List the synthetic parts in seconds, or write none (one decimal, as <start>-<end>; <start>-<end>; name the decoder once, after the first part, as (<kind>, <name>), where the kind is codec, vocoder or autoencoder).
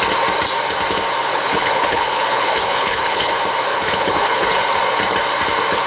1.3-3.3 (codec, HILCodec); 3.7-4.7